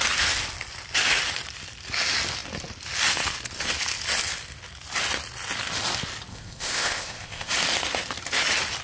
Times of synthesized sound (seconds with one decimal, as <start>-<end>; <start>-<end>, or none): 6.3-7.5